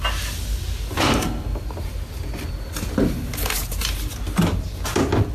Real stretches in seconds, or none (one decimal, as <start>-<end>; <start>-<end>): 0.0-5.3